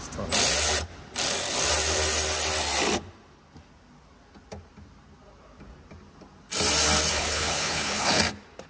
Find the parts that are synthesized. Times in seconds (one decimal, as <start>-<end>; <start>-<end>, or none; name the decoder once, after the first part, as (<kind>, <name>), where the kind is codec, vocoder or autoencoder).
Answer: 7.1-8.2 (codec, HILCodec)